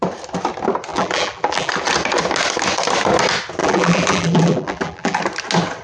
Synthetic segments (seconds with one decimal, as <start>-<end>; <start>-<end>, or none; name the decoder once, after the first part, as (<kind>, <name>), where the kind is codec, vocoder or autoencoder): 0.9-1.7 (vocoder, BigVGAN v2); 3.6-5.2